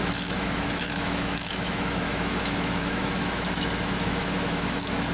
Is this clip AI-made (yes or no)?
yes